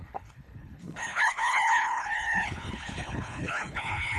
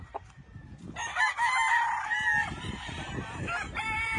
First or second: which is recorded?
second